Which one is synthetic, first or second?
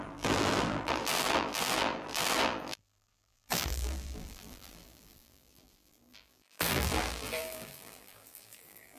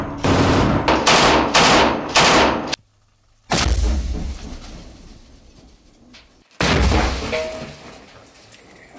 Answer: first